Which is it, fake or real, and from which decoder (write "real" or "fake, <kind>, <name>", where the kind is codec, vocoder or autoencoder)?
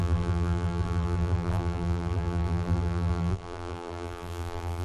fake, vocoder, BigVGAN v2